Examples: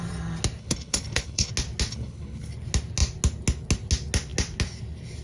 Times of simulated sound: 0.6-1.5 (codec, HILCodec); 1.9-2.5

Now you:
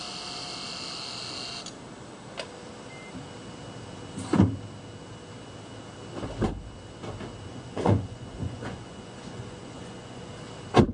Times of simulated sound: 7.5-10.3 (vocoder, Vocos)

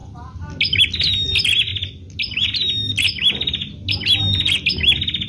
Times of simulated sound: none

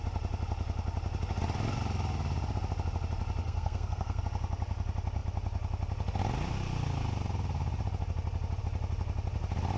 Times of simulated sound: 3.4-4.2 (codec, SNAC)